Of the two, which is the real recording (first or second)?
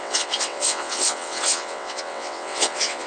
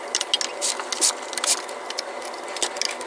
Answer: second